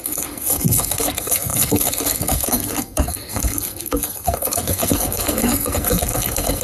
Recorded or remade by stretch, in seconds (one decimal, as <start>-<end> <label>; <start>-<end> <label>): 0.0-6.6 remade